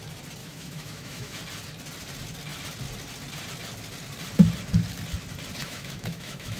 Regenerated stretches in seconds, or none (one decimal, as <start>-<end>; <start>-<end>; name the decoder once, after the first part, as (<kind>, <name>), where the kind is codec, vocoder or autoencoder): 0.4-1.4 (autoencoder, DAC-VAE); 5.6-6.6